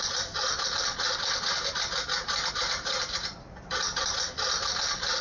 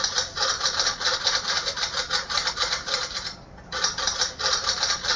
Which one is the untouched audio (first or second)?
first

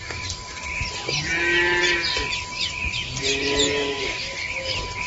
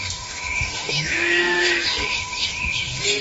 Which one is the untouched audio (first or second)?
first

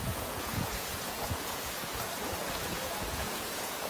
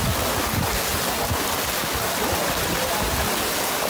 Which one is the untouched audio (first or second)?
second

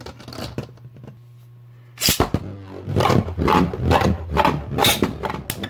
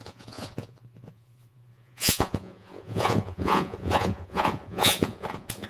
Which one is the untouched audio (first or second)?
first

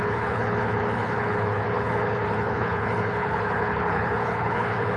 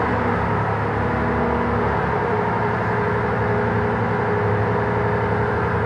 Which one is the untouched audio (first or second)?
second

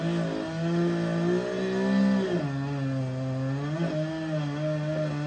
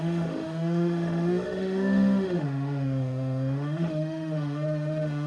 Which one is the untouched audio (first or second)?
first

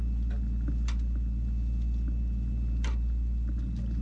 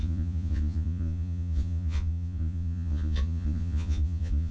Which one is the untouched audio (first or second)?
first